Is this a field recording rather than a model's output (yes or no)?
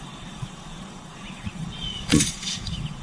no